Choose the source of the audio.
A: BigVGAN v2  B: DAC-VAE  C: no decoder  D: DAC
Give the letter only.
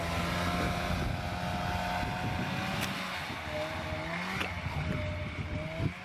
C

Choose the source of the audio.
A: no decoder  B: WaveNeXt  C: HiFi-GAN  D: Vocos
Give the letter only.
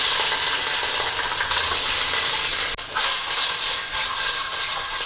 A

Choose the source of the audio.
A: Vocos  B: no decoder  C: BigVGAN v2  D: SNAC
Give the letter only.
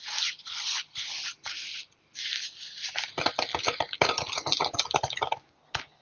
B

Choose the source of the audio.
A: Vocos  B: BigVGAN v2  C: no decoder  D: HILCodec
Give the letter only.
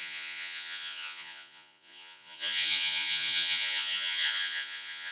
A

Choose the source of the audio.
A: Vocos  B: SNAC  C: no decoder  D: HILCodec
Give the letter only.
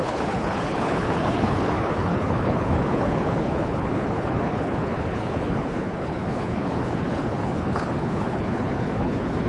D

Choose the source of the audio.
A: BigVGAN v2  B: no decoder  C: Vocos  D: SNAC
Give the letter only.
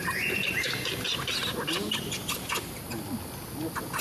B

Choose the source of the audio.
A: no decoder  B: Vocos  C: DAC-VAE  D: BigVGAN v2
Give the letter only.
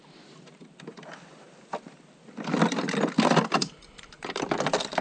A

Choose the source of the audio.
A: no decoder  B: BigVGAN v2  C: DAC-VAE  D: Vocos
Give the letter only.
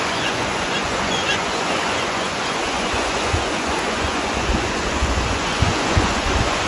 D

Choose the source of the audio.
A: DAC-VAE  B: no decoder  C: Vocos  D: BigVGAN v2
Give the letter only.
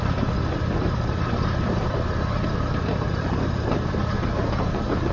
D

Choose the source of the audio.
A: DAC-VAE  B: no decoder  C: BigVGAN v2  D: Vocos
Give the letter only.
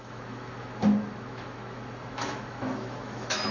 A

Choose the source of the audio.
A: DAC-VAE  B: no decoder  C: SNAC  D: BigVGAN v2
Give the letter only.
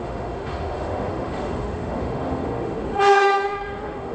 A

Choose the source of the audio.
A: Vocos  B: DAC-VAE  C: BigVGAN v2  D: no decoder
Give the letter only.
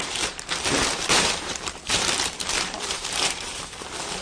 C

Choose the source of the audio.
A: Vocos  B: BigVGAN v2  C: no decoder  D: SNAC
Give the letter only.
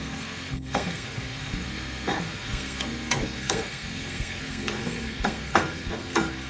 D